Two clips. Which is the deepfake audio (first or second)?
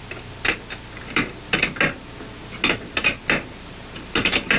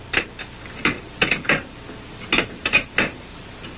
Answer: second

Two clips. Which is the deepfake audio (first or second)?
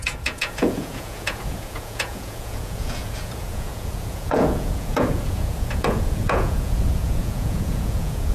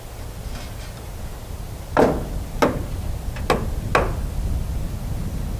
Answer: first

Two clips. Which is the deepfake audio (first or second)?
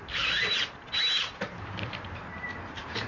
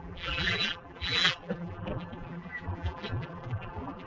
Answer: second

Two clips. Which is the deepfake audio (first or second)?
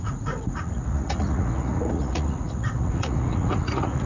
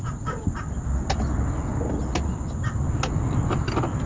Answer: first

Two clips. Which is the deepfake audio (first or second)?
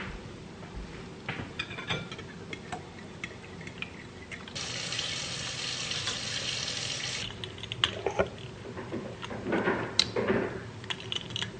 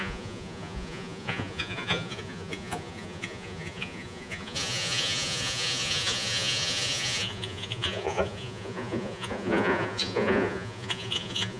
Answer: second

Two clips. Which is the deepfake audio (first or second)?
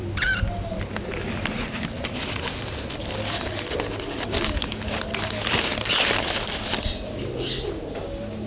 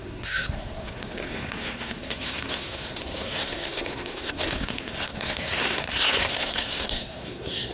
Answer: second